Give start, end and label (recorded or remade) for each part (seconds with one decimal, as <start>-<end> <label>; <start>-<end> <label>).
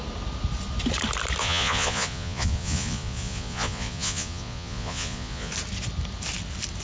0.0-1.4 recorded; 1.4-5.5 remade; 5.5-6.8 recorded